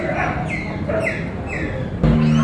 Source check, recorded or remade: recorded